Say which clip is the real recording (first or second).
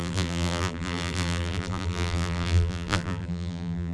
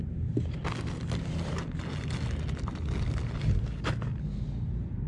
second